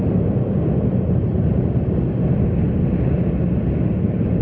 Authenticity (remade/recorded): recorded